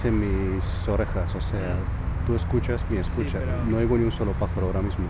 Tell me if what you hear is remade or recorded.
recorded